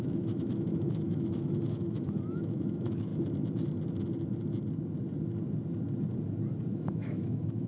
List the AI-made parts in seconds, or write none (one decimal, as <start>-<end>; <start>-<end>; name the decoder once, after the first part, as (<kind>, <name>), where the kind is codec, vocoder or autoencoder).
0.0-3.1 (autoencoder, DAC-VAE); 6.7-7.7